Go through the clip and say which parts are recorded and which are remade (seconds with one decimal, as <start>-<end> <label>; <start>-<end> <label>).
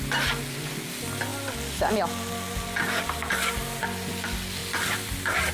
0.0-5.5 recorded